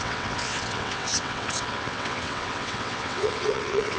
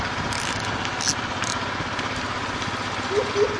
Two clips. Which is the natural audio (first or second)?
second